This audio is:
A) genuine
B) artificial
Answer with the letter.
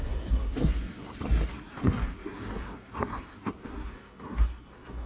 B